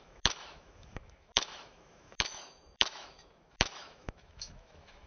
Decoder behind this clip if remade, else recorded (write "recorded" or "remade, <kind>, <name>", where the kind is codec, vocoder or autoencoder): remade, autoencoder, DAC-VAE